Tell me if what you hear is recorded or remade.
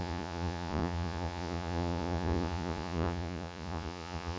remade